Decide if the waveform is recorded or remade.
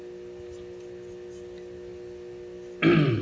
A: recorded